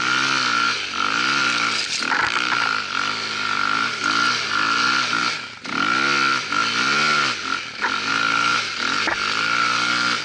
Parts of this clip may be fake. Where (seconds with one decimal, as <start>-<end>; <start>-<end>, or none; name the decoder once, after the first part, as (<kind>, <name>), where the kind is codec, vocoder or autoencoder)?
none